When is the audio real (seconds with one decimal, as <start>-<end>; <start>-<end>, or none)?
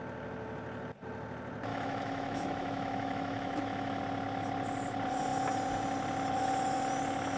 0.0-1.7; 4.0-7.4